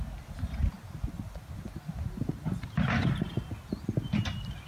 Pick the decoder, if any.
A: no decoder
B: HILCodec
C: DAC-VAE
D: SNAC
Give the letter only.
A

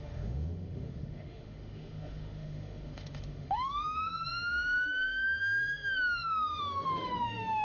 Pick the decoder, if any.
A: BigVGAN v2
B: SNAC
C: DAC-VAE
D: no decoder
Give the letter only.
C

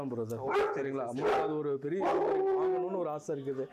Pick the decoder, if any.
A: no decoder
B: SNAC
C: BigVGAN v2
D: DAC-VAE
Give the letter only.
A